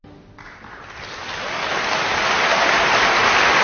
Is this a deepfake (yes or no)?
no